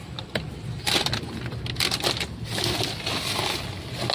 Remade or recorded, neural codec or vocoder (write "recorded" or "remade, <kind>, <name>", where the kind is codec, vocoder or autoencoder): recorded